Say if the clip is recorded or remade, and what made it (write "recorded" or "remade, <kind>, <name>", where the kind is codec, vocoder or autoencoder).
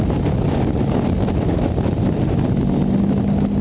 recorded